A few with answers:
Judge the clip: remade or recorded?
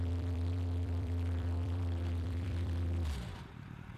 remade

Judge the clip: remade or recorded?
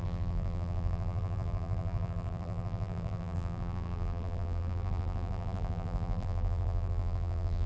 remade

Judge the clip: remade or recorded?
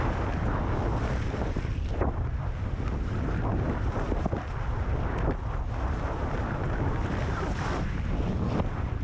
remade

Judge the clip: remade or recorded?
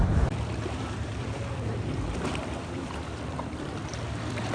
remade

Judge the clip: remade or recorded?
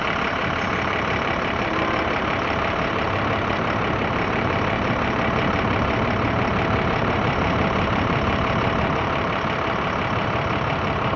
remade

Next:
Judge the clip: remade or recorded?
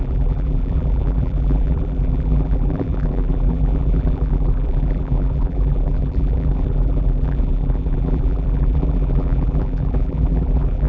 remade